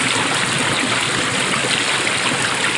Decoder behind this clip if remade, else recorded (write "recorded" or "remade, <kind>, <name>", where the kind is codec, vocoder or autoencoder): recorded